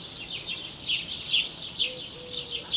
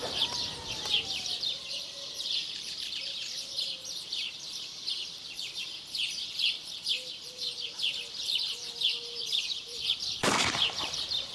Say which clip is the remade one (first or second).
second